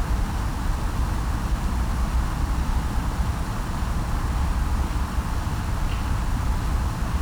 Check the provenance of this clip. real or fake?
real